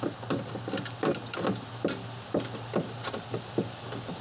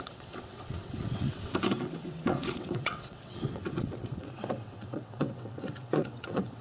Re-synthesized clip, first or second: second